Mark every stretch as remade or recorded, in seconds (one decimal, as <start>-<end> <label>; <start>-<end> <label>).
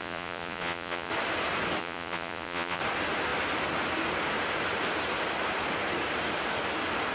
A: 0.0-1.1 remade; 1.1-1.8 recorded; 1.8-2.8 remade; 2.8-7.1 recorded